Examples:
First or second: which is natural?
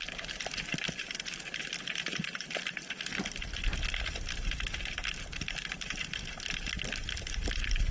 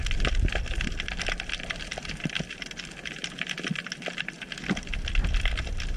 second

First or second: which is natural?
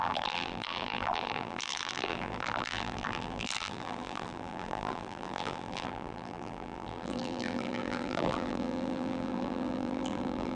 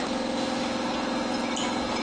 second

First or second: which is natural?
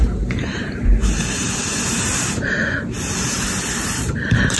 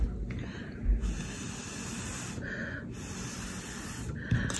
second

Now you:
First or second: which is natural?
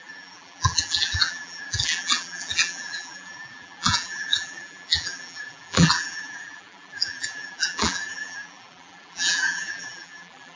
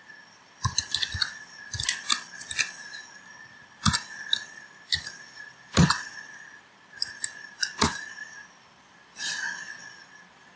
second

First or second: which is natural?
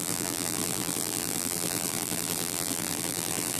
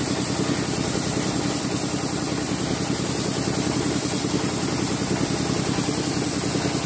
second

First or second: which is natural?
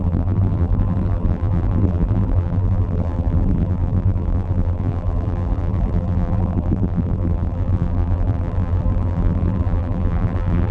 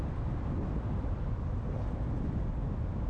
second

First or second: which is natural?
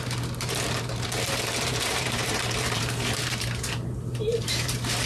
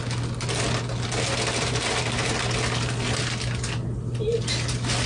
second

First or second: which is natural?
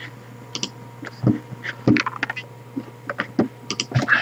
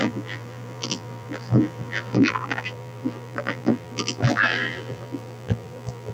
first